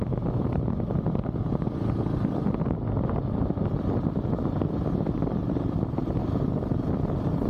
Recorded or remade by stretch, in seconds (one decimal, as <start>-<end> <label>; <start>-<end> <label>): 0.0-7.5 recorded